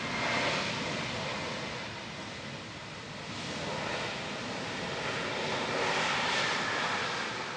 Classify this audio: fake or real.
real